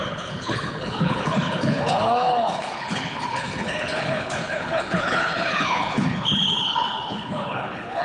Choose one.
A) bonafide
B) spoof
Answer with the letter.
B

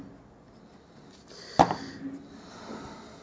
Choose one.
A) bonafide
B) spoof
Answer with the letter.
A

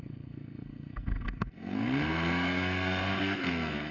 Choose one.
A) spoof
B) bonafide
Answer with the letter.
A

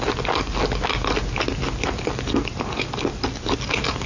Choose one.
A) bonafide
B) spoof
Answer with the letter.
A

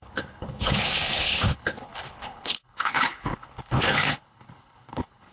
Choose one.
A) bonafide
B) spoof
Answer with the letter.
B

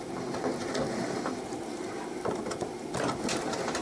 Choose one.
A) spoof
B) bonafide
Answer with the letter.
B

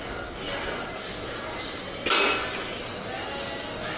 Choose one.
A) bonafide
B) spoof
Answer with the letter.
A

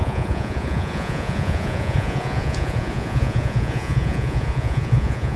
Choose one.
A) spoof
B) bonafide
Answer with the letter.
A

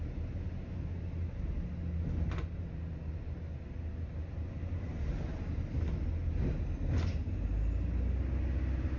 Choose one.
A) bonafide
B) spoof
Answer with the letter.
A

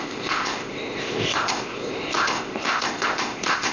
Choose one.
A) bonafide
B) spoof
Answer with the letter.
B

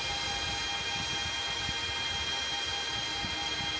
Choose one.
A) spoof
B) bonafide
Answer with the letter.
B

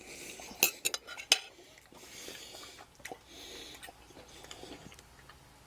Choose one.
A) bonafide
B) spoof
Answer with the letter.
A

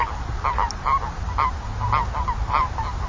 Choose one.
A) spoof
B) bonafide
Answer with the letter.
B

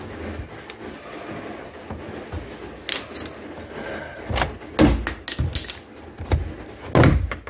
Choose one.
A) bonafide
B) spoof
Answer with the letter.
A